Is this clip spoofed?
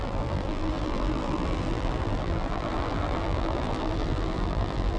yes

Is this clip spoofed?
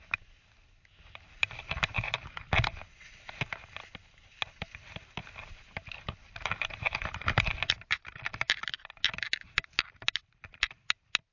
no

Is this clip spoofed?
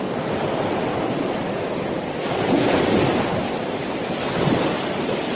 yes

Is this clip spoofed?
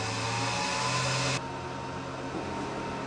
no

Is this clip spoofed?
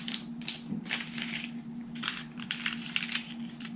yes